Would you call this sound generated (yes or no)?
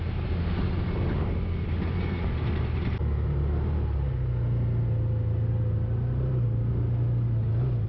no